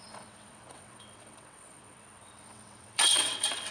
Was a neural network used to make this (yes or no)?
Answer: yes